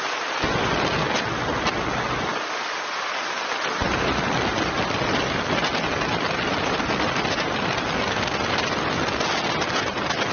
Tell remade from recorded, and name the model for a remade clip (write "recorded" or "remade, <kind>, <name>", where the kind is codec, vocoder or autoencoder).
recorded